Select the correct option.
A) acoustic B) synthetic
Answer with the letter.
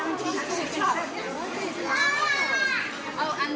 A